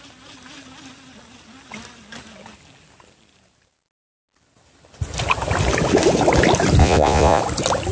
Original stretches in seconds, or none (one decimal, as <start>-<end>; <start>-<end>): 0.0-6.8; 7.4-7.9